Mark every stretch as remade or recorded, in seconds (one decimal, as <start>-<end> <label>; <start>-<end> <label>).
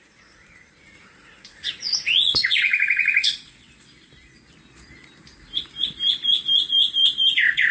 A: 0.0-2.7 remade; 2.7-7.3 recorded; 7.3-7.7 remade